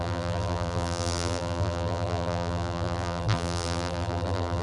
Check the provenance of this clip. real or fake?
fake